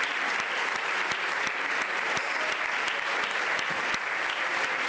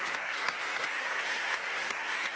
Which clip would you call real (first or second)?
first